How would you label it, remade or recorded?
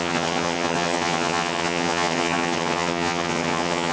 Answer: remade